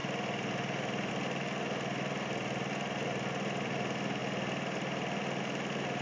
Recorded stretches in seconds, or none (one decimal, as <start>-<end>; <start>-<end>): 0.0-6.0